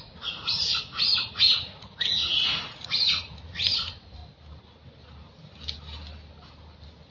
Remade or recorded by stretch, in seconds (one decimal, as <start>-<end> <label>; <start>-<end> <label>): 0.0-4.2 remade; 4.2-7.1 recorded